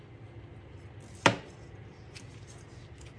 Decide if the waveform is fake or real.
real